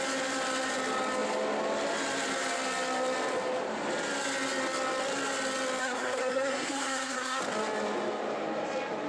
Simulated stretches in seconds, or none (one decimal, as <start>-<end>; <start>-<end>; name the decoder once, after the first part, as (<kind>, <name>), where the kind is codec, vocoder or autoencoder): 5.8-7.4 (codec, SNAC)